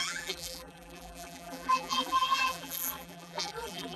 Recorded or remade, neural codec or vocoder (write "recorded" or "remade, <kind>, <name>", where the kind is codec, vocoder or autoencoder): remade, vocoder, BigVGAN v2